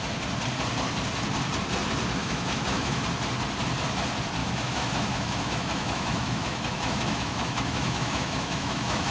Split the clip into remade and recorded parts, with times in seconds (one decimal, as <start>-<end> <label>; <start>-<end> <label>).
0.0-2.2 recorded; 2.2-3.0 remade; 3.0-4.4 recorded; 4.4-9.1 remade